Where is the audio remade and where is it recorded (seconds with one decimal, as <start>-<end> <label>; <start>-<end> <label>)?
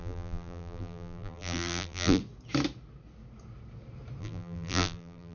0.0-2.2 remade; 2.2-4.2 recorded; 4.2-5.3 remade